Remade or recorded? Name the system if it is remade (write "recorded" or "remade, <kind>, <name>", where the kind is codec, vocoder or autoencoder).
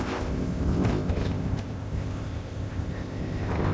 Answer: remade, codec, ZipCodec